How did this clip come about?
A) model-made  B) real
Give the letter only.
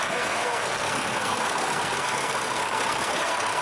A